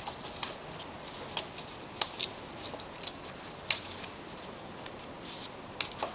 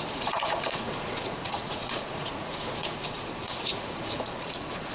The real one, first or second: first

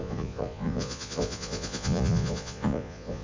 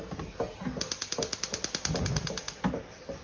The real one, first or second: second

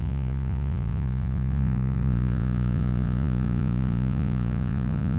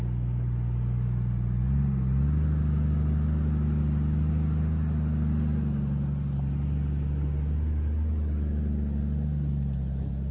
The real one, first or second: second